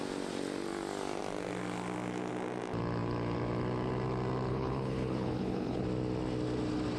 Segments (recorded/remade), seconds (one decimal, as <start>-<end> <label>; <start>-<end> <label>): 0.0-4.5 recorded; 4.5-5.8 remade; 5.8-7.0 recorded